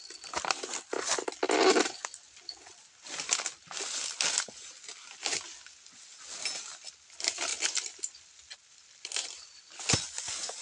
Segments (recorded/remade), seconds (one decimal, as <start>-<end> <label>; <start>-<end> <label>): 0.0-10.6 recorded